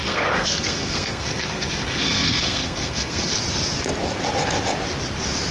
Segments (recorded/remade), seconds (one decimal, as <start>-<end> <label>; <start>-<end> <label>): 0.0-3.3 remade; 3.3-5.5 recorded